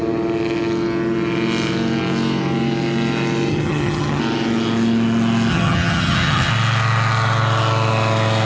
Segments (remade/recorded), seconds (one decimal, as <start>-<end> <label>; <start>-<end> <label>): 0.0-3.5 recorded; 3.5-4.2 remade; 4.2-5.5 recorded; 5.5-6.5 remade; 6.5-8.4 recorded